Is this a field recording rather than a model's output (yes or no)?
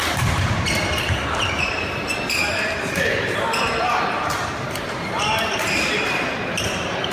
no